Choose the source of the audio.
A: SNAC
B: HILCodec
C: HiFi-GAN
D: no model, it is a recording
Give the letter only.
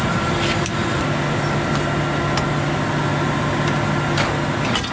D